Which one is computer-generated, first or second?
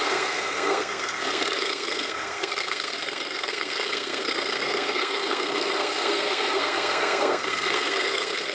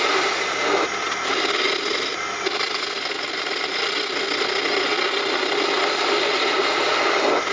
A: first